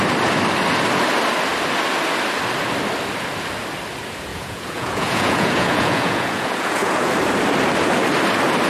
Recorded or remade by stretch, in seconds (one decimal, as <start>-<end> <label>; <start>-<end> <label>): 0.0-4.3 recorded; 4.3-7.1 remade; 7.1-8.7 recorded